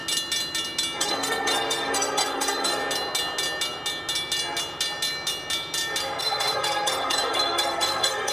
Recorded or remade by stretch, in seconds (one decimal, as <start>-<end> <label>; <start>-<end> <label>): 0.0-1.0 recorded; 1.0-2.8 remade; 2.8-6.2 recorded; 6.2-8.3 remade